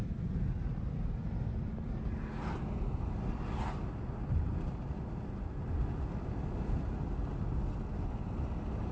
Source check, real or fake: real